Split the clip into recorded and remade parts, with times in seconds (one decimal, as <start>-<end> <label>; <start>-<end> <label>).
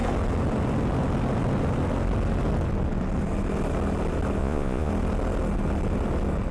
0.0-4.4 recorded; 4.4-4.9 remade; 4.9-6.5 recorded